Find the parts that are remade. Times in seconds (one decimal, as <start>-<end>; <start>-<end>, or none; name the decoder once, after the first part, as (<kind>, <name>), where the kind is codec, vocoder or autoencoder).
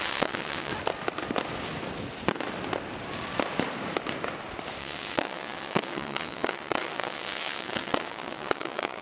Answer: 0.0-0.7 (vocoder, WaveNeXt); 4.8-9.0